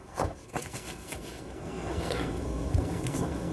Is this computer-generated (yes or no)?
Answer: yes